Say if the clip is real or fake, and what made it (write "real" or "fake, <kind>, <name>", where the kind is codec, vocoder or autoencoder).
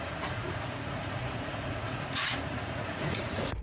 fake, vocoder, Vocos